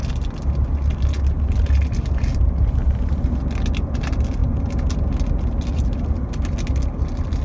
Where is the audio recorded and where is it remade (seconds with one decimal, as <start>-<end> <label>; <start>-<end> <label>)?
0.0-2.3 recorded; 2.3-3.4 remade; 3.4-7.4 recorded